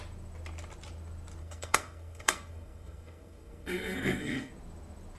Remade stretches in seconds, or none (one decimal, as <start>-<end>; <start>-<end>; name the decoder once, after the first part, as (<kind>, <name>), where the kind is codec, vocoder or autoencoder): 1.4-4.5 (codec, SNAC)